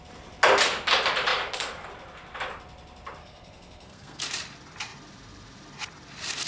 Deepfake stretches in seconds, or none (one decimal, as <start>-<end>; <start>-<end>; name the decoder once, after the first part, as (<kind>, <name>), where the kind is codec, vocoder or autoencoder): 3.2-4.2 (codec, SNAC)